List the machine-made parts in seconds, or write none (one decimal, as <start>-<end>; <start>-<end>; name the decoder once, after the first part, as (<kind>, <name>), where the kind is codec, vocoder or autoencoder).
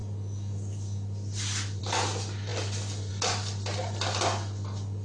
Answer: none